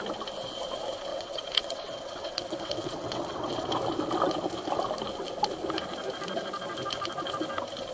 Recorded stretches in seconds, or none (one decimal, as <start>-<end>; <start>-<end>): 0.0-1.1; 3.7-7.9

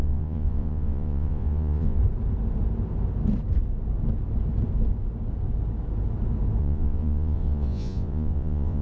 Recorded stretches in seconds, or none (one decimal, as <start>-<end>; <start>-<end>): 2.0-6.6

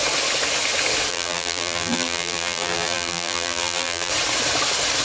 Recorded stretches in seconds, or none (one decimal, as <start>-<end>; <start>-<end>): 0.0-1.1; 4.1-5.0

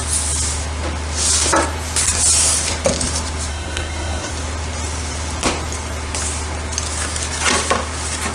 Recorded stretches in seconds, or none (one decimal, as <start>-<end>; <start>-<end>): 0.0-3.5; 4.3-8.3

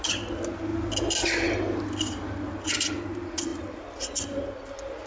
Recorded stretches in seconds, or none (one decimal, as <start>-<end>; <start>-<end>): 0.0-5.1

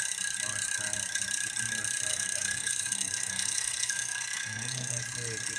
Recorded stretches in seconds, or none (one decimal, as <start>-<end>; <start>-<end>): 0.0-2.1; 5.0-5.6